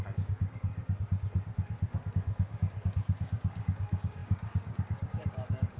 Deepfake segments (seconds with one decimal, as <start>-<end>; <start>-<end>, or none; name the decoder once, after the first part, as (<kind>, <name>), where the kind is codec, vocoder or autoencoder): 0.0-0.7 (codec, DAC); 2.1-5.8